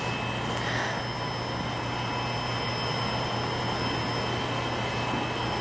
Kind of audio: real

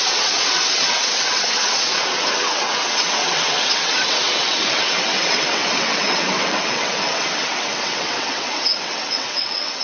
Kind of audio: fake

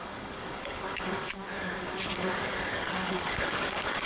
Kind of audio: fake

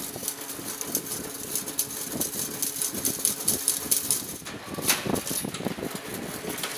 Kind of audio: real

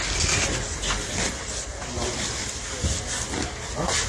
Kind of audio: real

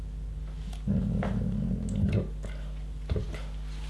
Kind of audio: real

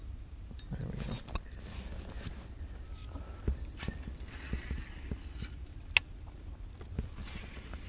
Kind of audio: real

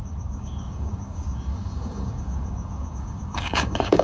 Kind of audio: fake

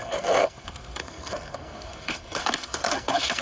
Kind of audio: fake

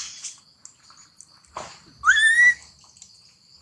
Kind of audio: real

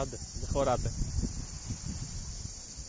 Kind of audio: real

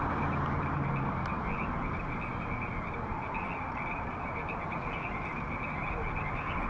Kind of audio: real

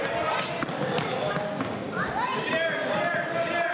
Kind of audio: real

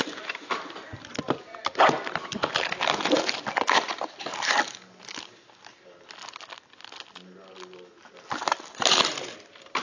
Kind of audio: real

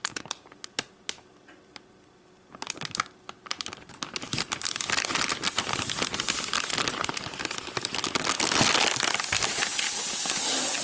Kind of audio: real